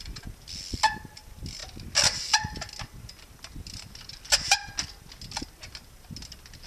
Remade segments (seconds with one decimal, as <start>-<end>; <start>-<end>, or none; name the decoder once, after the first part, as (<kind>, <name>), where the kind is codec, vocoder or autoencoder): none